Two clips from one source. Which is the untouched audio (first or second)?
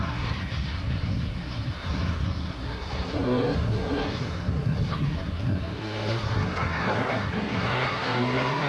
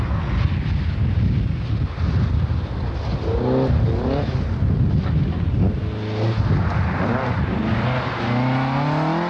second